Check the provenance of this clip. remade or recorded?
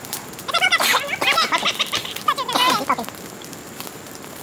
remade